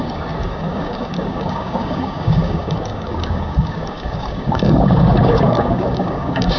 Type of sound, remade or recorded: remade